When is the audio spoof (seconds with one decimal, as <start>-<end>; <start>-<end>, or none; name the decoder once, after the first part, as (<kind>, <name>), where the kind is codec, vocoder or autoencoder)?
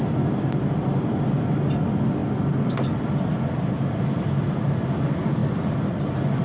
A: none